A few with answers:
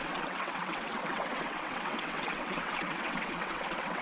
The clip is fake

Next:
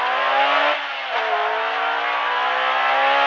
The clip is real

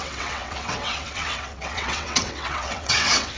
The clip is fake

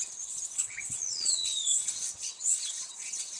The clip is fake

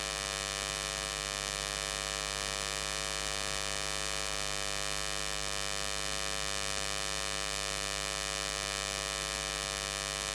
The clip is real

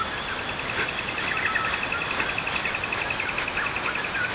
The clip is real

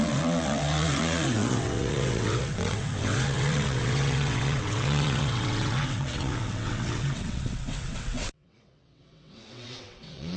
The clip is fake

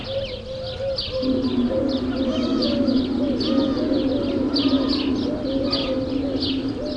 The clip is real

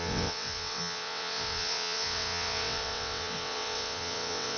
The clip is fake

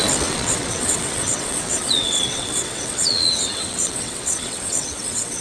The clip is fake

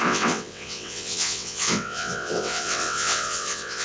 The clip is fake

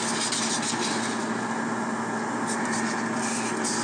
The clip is real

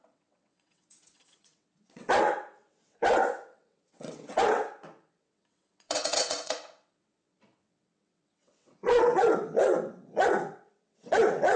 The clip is fake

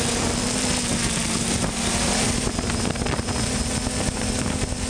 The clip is real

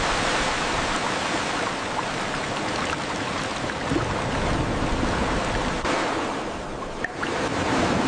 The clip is real